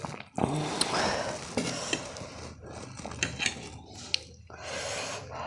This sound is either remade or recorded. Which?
recorded